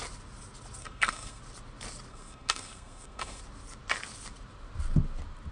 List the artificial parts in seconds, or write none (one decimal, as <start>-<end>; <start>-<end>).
0.8-1.4; 2.1-3.4